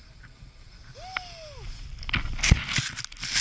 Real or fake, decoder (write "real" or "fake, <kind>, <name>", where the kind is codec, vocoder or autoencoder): real